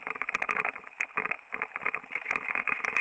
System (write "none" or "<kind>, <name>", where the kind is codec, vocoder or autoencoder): none